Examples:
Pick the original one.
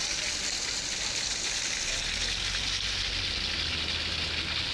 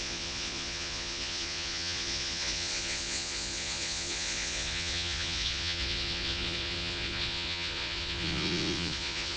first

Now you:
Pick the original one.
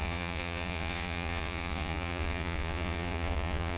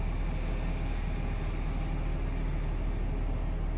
second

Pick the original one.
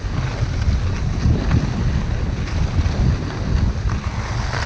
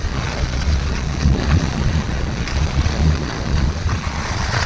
first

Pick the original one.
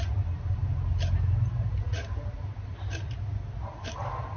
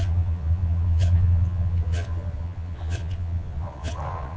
first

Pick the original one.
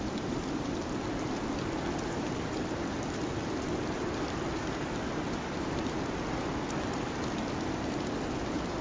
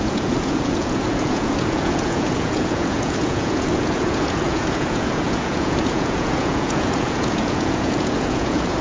first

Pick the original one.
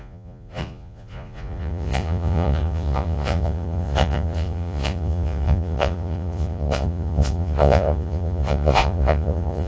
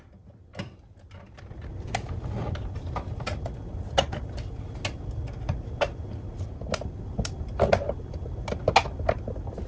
second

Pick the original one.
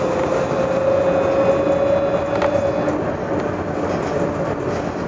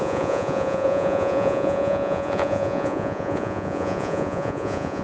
first